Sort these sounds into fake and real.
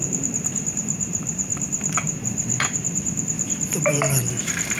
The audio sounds fake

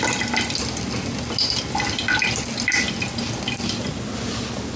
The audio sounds real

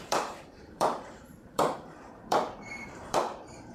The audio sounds fake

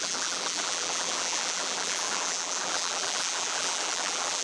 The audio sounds fake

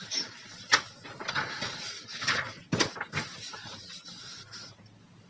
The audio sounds real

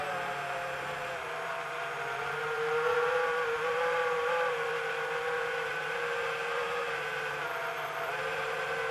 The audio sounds fake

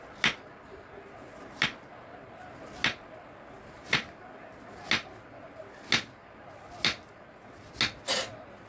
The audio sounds real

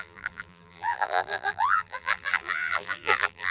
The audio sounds fake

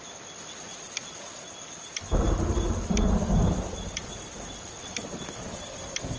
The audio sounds real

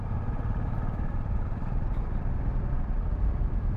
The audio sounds fake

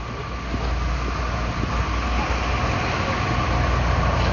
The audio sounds real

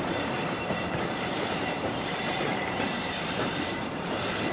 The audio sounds fake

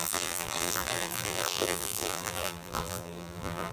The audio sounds fake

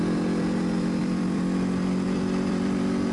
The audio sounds fake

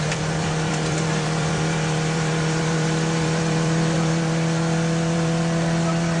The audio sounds fake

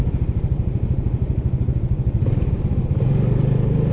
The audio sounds fake